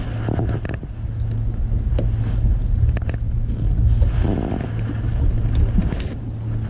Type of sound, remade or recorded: recorded